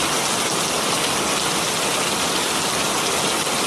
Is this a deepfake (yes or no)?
no